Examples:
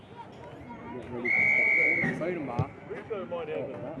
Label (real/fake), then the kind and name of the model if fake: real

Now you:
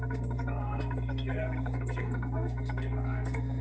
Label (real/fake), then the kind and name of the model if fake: fake, codec, SNAC